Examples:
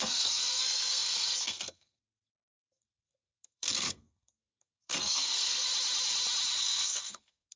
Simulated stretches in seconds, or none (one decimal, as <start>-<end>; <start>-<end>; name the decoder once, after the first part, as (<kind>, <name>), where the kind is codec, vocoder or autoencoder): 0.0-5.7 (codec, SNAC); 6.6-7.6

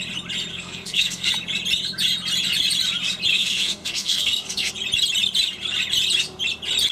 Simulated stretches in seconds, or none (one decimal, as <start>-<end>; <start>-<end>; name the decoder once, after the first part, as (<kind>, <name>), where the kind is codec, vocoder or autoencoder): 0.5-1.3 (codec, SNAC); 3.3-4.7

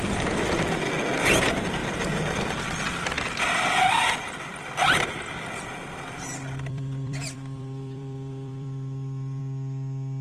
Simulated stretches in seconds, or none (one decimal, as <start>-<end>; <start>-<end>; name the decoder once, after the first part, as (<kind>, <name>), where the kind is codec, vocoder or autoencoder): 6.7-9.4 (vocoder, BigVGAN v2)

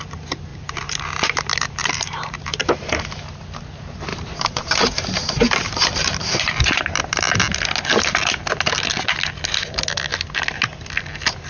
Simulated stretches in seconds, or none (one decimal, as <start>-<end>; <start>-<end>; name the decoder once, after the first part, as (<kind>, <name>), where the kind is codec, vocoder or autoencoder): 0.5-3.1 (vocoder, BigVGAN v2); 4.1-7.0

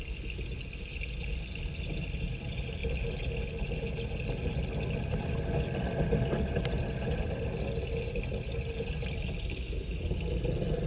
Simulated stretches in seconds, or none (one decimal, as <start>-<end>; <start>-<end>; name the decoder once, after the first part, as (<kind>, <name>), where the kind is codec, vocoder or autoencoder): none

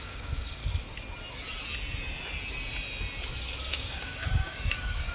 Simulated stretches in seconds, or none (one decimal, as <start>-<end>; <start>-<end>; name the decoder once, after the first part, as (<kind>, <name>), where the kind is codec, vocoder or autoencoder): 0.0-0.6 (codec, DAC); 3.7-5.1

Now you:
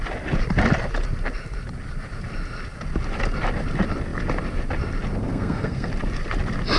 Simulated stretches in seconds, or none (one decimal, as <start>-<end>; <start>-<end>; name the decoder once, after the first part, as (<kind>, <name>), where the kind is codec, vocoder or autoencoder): 5.2-5.9 (codec, SNAC)